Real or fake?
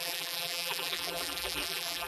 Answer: fake